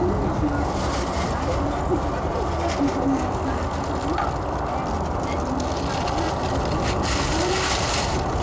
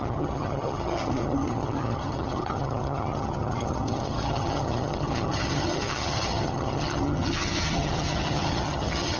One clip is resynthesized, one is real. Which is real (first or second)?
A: first